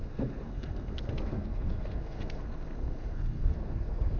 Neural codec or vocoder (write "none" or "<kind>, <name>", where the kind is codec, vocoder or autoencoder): codec, SNAC